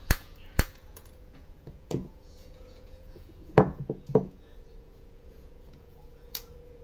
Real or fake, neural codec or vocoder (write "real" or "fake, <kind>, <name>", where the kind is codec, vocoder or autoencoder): fake, vocoder, Vocos